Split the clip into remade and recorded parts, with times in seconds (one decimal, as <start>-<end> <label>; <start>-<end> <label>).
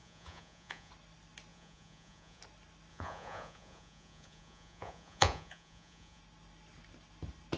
0.0-0.9 remade; 0.9-1.5 recorded; 1.5-2.4 remade; 2.4-2.9 recorded; 2.9-6.2 remade; 6.2-7.6 recorded